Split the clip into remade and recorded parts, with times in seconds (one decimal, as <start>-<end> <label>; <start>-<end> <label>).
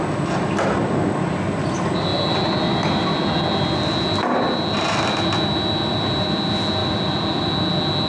0.0-6.8 recorded; 6.8-7.5 remade; 7.5-8.1 recorded